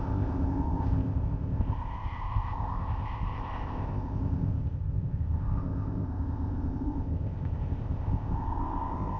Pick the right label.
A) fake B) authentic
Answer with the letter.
A